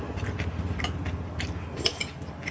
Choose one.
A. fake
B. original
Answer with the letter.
B